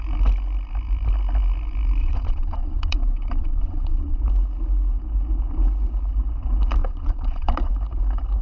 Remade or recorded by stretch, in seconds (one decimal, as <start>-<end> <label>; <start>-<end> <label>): 0.0-2.0 recorded; 2.0-4.2 remade; 4.2-6.8 recorded; 6.8-7.7 remade; 7.7-8.4 recorded